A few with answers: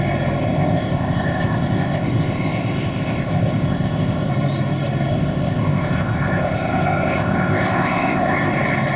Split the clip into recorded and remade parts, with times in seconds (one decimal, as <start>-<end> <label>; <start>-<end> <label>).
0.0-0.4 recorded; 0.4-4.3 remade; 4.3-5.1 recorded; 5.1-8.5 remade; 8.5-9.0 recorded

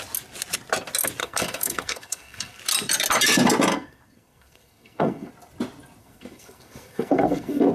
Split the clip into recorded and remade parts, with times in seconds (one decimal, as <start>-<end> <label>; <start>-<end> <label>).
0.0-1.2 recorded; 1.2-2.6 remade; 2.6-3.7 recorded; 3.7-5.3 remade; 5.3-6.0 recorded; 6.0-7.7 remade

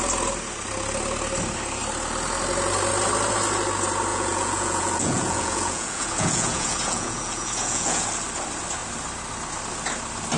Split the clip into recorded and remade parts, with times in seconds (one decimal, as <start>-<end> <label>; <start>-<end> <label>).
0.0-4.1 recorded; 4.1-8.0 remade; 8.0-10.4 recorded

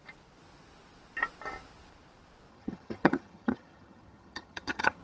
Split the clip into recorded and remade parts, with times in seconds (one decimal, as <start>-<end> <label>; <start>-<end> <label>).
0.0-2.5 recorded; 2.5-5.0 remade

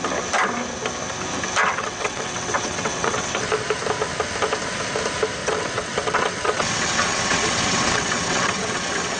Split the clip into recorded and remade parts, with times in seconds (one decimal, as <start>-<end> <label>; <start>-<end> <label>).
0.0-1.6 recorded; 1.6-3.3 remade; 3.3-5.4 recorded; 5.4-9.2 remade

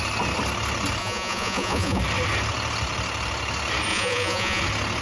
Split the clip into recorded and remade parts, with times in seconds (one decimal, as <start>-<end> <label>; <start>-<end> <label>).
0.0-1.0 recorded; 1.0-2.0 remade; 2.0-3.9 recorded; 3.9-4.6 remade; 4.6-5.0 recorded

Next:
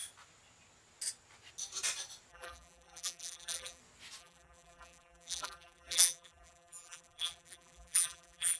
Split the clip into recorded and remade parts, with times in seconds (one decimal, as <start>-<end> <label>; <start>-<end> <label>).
0.0-2.3 recorded; 2.3-3.8 remade; 3.8-4.2 recorded; 4.2-8.6 remade